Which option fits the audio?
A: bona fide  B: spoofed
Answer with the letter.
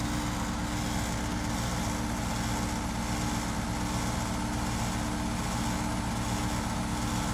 A